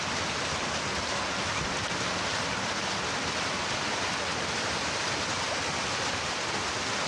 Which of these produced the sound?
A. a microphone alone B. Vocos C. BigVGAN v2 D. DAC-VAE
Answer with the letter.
A